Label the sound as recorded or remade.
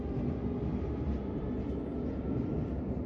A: recorded